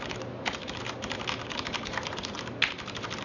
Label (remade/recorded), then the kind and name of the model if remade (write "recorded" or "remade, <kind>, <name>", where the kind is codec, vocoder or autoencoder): recorded